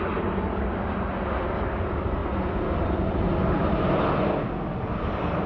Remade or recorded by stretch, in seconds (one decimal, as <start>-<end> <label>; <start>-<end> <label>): 0.0-5.5 recorded